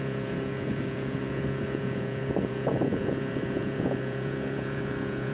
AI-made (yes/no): yes